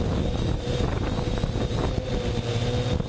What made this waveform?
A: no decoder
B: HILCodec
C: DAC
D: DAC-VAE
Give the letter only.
A